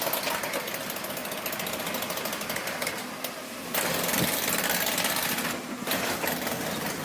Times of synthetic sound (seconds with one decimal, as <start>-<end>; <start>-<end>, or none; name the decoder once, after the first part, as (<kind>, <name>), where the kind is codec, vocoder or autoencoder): none